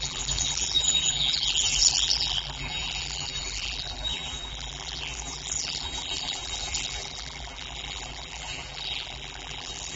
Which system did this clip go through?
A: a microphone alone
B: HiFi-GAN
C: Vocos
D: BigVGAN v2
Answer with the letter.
D